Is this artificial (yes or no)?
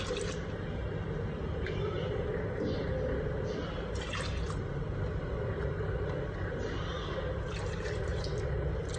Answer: no